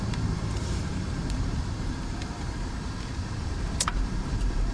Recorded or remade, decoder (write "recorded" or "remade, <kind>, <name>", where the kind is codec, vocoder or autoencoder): remade, vocoder, BigVGAN v2